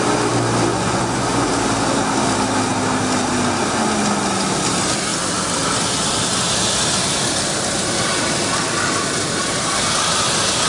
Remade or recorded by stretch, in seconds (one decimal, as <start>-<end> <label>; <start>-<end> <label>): 0.0-0.7 recorded; 0.7-1.5 remade; 1.5-10.7 recorded